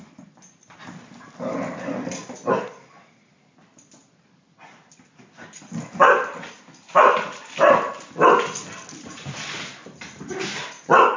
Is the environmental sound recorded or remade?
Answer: recorded